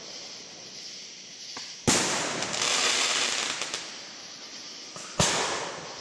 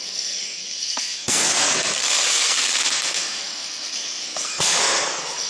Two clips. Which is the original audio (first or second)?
first